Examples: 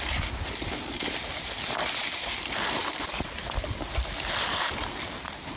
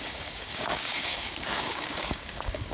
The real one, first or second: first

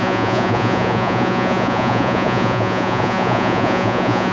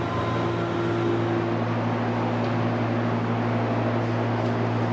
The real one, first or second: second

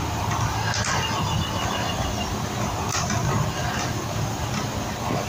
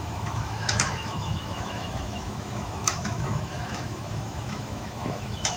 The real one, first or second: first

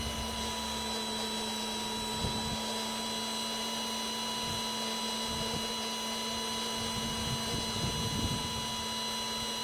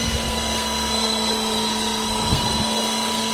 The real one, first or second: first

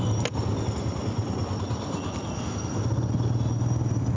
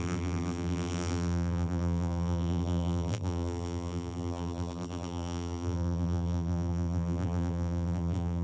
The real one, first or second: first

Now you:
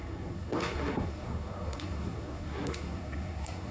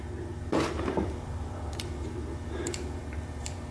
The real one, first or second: second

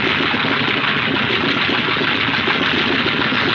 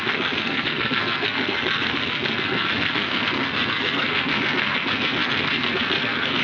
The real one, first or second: first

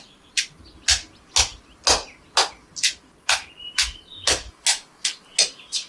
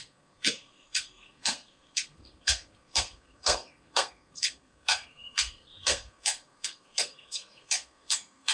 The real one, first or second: first